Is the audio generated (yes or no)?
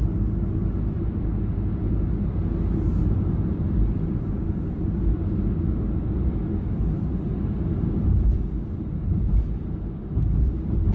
no